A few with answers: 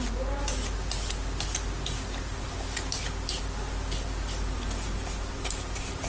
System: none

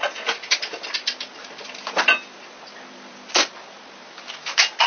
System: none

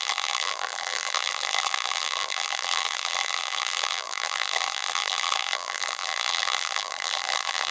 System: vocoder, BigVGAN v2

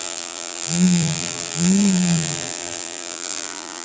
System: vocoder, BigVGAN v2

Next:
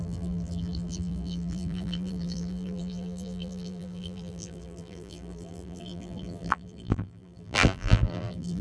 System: vocoder, BigVGAN v2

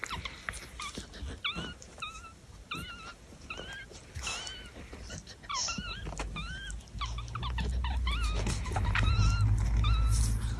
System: none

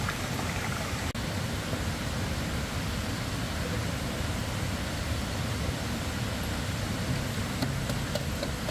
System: none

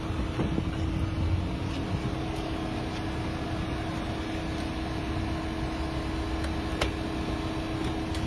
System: none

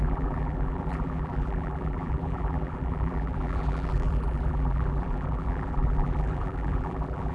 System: vocoder, BigVGAN v2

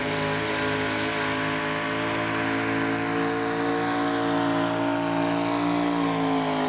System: none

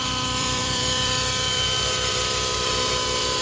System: vocoder, BigVGAN v2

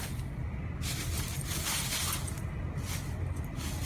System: none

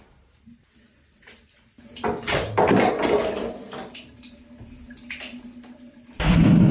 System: none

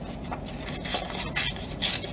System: none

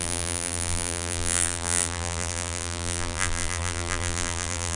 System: vocoder, BigVGAN v2